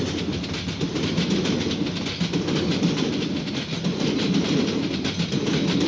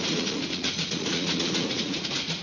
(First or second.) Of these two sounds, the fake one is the second